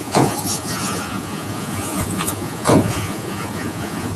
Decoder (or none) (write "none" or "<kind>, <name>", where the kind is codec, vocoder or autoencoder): vocoder, Vocos